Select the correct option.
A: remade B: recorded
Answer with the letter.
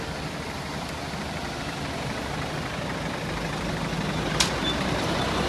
A